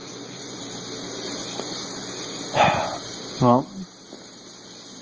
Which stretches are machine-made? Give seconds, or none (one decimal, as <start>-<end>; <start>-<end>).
0.0-0.6; 1.4-3.0